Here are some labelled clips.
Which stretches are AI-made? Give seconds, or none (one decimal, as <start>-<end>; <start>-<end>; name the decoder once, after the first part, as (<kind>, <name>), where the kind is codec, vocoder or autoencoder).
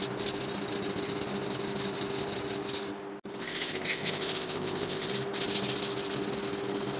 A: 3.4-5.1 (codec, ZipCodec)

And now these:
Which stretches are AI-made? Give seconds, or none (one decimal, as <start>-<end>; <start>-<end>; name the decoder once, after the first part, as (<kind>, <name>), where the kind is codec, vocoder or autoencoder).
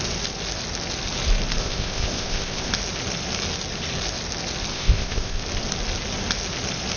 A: 1.6-2.7 (codec, ZipCodec); 4.7-5.4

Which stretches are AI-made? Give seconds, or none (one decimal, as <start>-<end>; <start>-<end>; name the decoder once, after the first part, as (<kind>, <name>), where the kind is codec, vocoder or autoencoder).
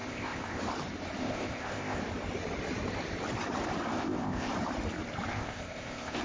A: 0.0-0.6 (codec, ZipCodec); 1.2-2.0; 3.9-4.5; 5.3-6.2